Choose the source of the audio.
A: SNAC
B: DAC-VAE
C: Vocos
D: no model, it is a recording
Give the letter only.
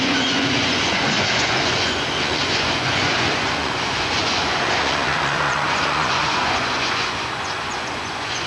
C